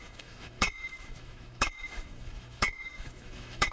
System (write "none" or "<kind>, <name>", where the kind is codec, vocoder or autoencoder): autoencoder, DAC-VAE